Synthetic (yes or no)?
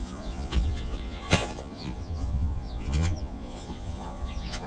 yes